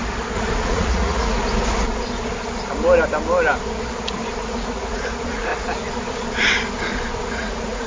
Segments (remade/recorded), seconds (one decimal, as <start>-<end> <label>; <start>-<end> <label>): 0.0-0.6 recorded; 0.6-1.4 remade; 1.4-4.4 recorded; 4.4-5.5 remade; 5.5-7.3 recorded; 7.3-7.9 remade